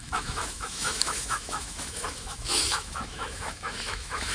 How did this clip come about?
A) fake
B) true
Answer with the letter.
A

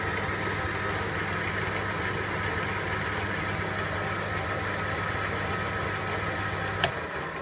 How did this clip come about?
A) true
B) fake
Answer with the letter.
A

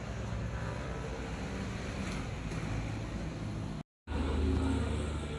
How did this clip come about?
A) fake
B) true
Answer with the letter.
B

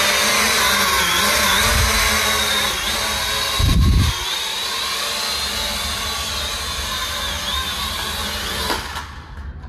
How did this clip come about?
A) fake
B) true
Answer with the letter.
B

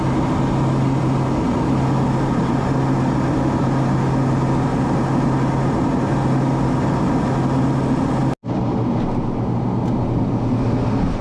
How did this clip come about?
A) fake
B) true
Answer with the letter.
B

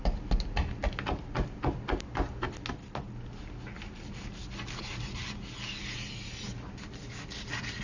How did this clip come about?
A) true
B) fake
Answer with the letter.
A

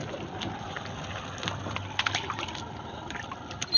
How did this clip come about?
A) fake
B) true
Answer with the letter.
B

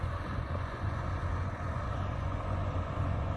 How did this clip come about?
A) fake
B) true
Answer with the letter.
A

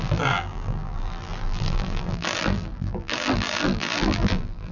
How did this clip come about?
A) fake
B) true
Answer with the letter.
A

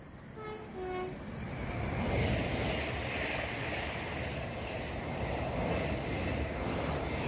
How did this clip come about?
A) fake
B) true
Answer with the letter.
B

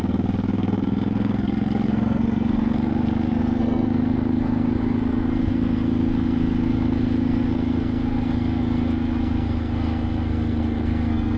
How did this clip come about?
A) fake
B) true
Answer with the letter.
A